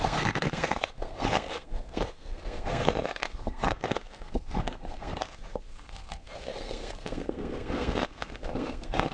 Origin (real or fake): fake